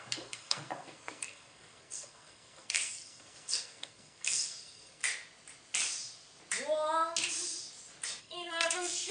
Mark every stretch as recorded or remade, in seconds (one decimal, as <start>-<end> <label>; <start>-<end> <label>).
0.0-5.0 remade; 5.0-8.2 recorded; 8.2-9.1 remade